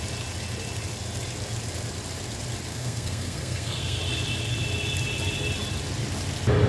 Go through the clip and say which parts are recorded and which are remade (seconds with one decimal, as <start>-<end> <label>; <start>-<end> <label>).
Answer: 0.0-2.7 recorded; 2.7-4.0 remade; 4.0-6.7 recorded